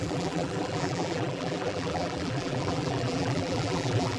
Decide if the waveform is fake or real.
fake